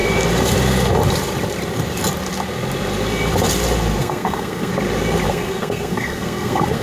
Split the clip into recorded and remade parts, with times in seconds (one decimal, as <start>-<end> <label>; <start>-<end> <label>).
0.0-4.0 recorded; 4.0-4.7 remade; 4.7-5.3 recorded; 5.3-6.8 remade